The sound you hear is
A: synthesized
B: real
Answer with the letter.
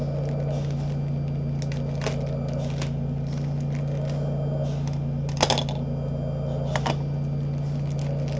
B